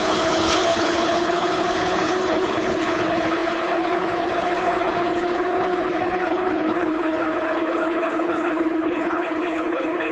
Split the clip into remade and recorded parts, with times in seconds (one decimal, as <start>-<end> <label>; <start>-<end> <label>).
0.0-10.1 remade